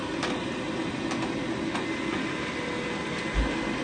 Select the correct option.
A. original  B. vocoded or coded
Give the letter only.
A